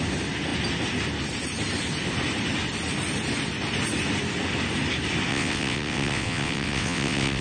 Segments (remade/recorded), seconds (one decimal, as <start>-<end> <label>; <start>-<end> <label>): 0.0-5.3 recorded; 5.3-7.4 remade